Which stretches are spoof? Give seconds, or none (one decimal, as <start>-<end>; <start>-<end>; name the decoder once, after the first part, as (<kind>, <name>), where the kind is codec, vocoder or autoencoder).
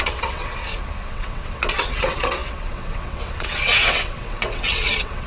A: 0.0-0.5 (vocoder, WaveNeXt); 1.1-5.3